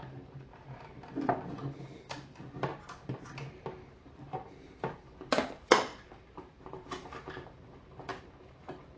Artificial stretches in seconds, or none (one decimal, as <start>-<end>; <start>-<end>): 0.0-0.5; 1.3-2.7; 3.9-9.0